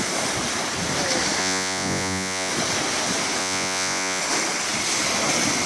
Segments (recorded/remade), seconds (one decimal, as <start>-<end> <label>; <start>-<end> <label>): 0.0-1.4 recorded; 1.4-2.5 remade; 2.5-3.4 recorded; 3.4-4.2 remade; 4.2-5.7 recorded